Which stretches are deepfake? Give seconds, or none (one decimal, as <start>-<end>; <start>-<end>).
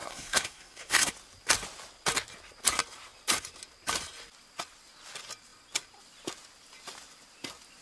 0.0-1.1